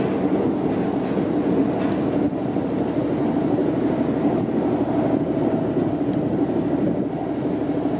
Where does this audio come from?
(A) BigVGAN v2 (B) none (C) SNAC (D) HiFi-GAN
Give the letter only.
B